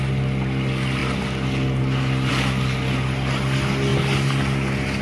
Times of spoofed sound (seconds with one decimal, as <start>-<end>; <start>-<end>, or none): none